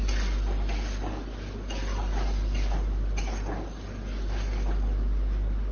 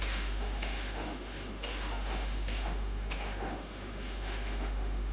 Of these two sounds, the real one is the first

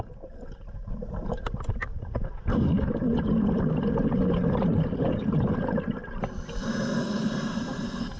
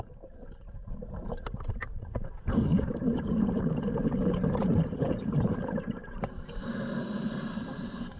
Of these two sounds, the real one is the first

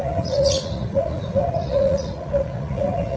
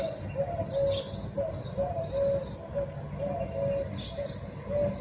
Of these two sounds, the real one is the second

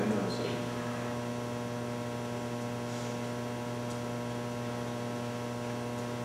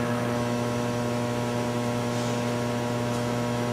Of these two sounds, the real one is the first